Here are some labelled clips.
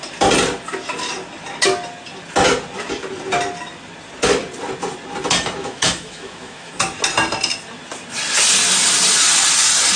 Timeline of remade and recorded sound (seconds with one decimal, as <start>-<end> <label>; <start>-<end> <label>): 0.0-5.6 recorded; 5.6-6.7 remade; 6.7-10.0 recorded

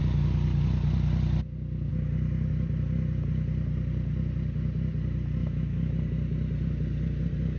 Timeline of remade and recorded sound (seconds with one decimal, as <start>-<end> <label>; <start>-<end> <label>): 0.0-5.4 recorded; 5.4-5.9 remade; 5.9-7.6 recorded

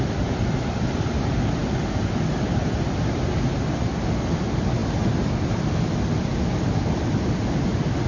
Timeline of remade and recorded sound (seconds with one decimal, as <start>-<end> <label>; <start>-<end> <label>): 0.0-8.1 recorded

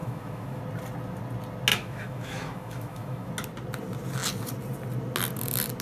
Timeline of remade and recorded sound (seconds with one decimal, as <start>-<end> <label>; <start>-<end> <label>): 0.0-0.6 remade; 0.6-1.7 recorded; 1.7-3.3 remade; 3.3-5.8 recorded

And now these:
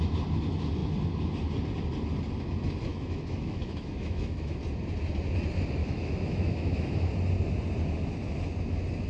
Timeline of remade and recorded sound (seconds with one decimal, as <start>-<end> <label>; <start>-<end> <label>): 0.0-2.9 recorded; 2.9-4.6 remade; 4.6-5.8 recorded; 5.8-7.1 remade; 7.1-9.1 recorded

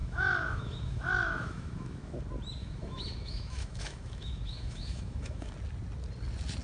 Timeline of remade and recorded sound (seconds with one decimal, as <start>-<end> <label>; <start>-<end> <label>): 0.0-2.2 remade; 2.2-2.6 recorded; 2.6-5.5 remade; 5.5-6.6 recorded

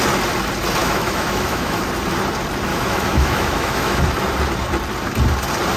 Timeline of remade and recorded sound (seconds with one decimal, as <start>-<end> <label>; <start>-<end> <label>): 0.0-0.8 recorded; 0.8-1.8 remade; 1.8-2.7 recorded; 2.7-4.0 remade; 4.0-5.8 recorded